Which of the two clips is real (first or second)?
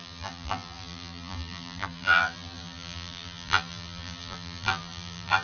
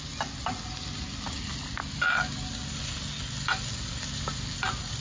second